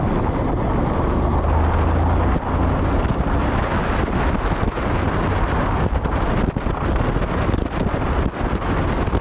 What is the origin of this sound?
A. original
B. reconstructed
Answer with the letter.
A